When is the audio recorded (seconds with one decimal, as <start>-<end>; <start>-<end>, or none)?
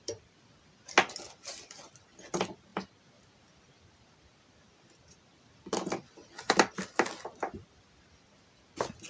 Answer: 0.0-2.7; 3.3-9.1